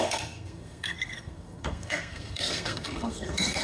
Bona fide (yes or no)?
no